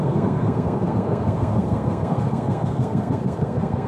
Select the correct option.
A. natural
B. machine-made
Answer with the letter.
B